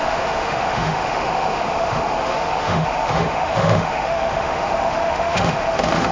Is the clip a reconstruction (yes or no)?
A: yes